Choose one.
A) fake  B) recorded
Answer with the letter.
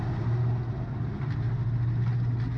B